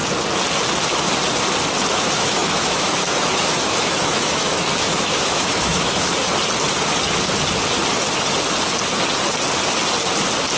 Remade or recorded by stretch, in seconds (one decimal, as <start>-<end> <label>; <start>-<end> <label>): 0.0-1.9 recorded; 1.9-6.1 remade; 6.1-10.6 recorded